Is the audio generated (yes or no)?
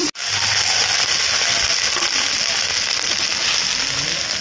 no